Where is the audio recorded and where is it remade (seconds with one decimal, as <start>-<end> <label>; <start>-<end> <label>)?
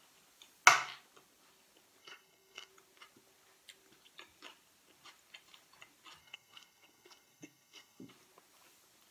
0.0-2.0 recorded; 2.0-2.7 remade; 2.7-6.2 recorded; 6.2-8.1 remade; 8.1-9.1 recorded